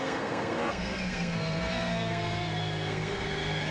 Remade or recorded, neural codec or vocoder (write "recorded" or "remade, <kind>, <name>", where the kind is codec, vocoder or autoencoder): remade, codec, SNAC